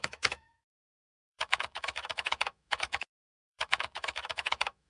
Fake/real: fake